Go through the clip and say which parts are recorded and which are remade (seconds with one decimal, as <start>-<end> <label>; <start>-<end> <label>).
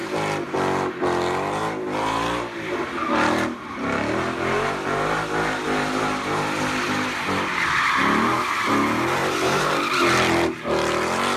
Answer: 0.0-9.2 recorded; 9.2-9.8 remade; 9.8-11.4 recorded